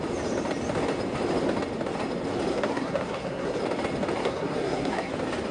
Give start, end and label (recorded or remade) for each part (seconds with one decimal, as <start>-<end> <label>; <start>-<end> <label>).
0.0-2.5 recorded; 2.5-3.6 remade; 3.6-4.2 recorded; 4.2-5.1 remade; 5.1-5.5 recorded